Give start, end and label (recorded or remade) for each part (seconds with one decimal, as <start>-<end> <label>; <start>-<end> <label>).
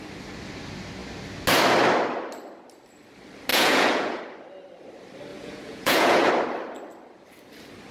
0.0-3.5 recorded; 3.5-4.2 remade; 4.2-5.3 recorded; 5.3-6.3 remade; 6.3-7.9 recorded